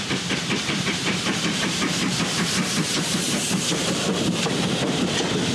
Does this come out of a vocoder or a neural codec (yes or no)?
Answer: yes